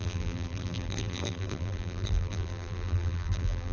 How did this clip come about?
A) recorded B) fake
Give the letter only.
B